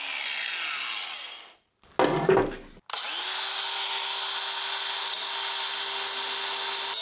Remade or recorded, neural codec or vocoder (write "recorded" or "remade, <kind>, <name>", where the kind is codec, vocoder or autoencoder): recorded